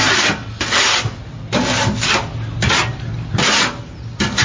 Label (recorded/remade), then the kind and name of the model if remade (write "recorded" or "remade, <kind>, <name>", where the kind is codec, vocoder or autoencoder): recorded